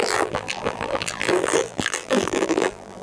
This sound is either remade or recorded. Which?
remade